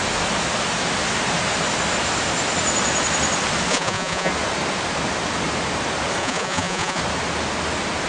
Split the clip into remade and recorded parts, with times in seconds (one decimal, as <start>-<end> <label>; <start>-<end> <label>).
0.0-3.7 recorded; 3.7-4.3 remade; 4.3-6.2 recorded; 6.2-7.0 remade; 7.0-8.1 recorded